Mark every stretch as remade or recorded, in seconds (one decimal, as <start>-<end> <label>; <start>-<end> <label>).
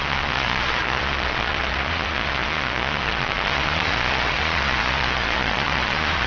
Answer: 0.0-6.3 remade